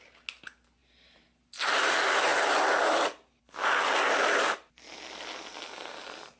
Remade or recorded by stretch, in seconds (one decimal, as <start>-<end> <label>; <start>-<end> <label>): 0.0-6.4 recorded